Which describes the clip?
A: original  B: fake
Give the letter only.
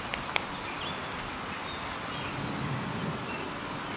A